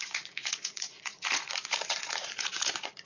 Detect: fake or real fake